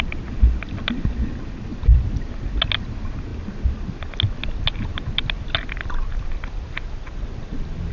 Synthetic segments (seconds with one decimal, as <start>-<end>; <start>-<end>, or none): 1.7-2.2

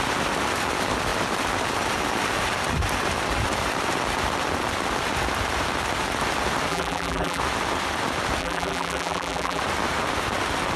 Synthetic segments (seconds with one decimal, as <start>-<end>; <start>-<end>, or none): 6.7-7.4; 8.4-9.6

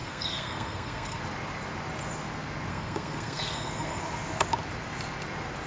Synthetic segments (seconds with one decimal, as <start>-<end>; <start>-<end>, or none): 0.0-1.2; 2.7-4.0

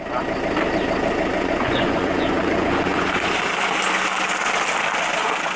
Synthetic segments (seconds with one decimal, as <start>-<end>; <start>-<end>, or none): 1.3-3.3

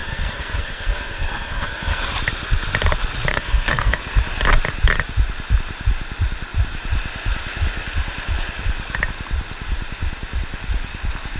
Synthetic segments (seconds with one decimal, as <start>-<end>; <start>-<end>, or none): 0.0-2.1; 3.3-4.0

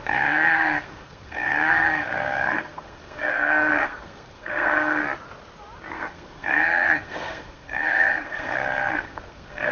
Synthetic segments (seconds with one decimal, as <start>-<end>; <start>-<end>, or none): 0.0-5.0; 5.9-9.7

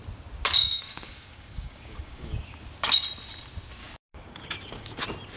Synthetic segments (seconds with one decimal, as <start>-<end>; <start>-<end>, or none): 0.6-2.6; 3.8-5.0